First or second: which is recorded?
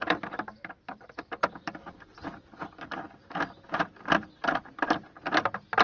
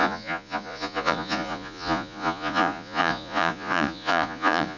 first